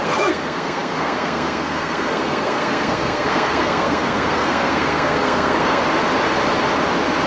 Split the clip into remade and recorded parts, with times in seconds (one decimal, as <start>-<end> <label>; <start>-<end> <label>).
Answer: 0.0-5.8 remade; 5.8-7.3 recorded

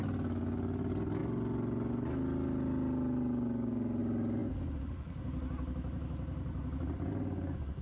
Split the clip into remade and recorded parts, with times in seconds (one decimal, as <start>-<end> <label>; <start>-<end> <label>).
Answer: 0.0-7.8 recorded

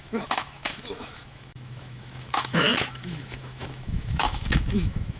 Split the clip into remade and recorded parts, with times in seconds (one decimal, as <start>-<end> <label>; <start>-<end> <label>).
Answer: 0.0-5.2 remade